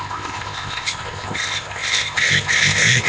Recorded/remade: remade